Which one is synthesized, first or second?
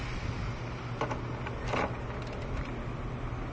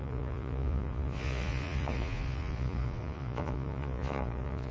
second